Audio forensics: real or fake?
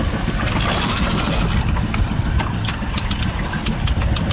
real